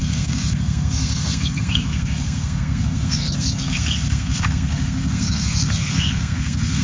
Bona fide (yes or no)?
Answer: no